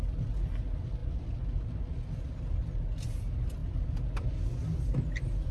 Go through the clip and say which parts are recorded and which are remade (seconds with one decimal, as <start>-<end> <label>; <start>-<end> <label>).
0.0-5.5 recorded